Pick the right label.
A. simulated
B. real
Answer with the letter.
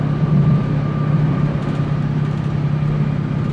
B